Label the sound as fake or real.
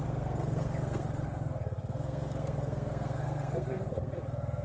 fake